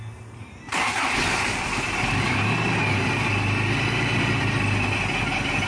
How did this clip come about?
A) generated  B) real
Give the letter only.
B